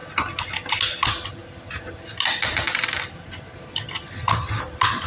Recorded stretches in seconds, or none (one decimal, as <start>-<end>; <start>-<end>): 0.0-1.4; 3.3-5.1